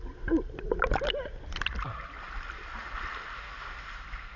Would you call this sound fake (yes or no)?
no